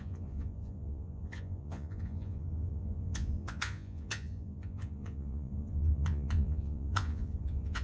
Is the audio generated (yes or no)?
yes